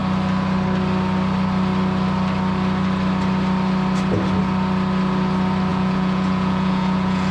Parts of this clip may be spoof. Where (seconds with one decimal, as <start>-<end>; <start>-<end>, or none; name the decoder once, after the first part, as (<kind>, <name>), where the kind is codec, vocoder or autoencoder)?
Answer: 5.7-7.3 (vocoder, Vocos)